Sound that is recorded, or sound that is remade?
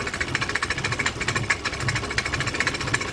recorded